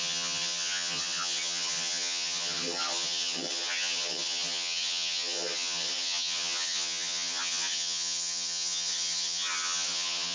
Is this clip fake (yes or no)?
yes